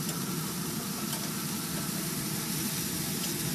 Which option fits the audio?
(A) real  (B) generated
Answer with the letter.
A